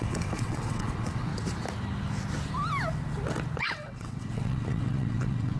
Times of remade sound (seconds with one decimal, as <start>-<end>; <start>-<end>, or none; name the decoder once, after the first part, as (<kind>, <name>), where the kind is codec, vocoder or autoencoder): 0.0-1.3 (vocoder, WaveNeXt); 3.6-5.6